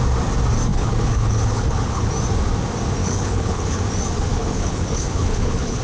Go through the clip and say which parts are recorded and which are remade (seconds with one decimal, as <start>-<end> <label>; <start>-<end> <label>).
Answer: 0.0-0.7 recorded; 0.7-2.1 remade; 2.1-3.0 recorded; 3.0-3.8 remade; 3.8-4.3 recorded; 4.3-5.8 remade

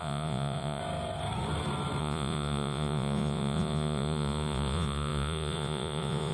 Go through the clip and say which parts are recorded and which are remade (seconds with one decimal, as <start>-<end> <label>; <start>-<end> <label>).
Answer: 0.0-0.8 remade; 0.8-2.0 recorded; 2.0-6.3 remade